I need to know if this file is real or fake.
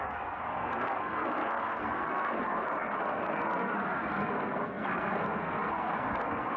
fake